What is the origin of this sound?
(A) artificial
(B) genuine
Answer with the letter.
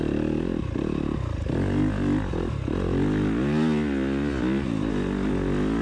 B